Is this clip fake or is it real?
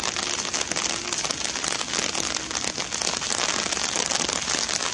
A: real